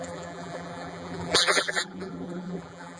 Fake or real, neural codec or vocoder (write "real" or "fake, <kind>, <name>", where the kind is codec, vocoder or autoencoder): fake, vocoder, BigVGAN v2